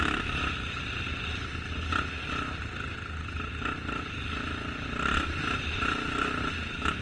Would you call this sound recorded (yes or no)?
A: yes